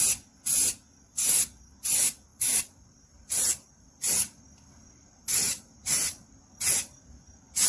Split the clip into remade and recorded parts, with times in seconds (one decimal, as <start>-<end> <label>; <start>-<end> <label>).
0.0-2.3 recorded; 2.3-3.9 remade; 3.9-5.2 recorded; 5.2-6.4 remade; 6.4-7.7 recorded